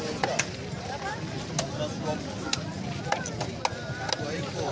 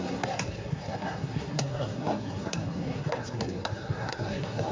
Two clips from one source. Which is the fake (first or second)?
second